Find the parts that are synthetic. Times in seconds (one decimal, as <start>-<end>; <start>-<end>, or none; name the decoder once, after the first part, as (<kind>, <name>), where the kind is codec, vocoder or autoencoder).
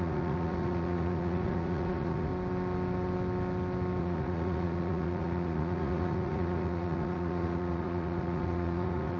0.0-2.3 (vocoder, Vocos); 4.0-9.2